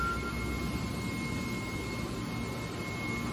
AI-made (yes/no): no